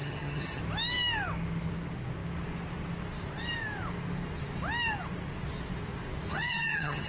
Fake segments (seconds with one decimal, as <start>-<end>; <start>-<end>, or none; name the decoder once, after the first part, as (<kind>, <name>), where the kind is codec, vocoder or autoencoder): 0.0-0.6 (vocoder, HiFi-GAN); 6.3-7.1